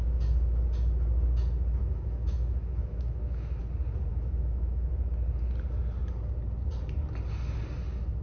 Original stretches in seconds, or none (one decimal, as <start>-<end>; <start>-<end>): 0.0-1.8; 3.6-4.1; 4.9-8.2